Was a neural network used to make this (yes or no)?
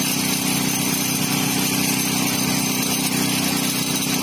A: no